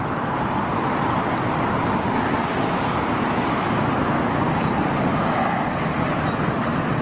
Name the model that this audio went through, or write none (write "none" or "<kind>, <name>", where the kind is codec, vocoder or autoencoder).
none